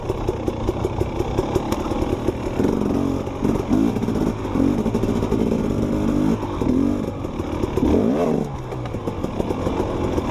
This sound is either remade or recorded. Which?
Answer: recorded